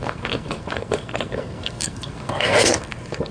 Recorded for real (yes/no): no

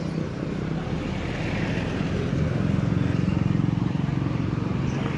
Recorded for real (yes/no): yes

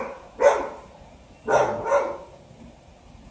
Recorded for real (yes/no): yes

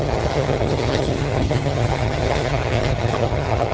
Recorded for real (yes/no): no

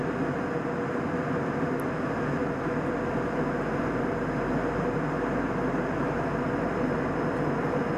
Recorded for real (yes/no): yes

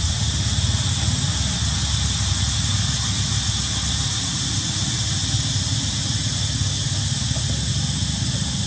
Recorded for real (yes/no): yes